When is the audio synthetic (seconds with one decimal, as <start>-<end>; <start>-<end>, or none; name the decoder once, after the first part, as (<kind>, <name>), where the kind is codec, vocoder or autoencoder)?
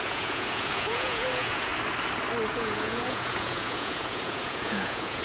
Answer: 0.0-1.7 (vocoder, Vocos); 2.5-5.2